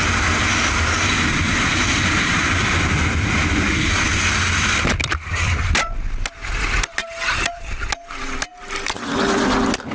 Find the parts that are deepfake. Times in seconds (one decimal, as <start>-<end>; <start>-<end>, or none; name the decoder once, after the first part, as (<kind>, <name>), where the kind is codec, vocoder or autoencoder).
none